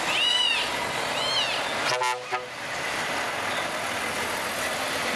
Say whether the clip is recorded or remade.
recorded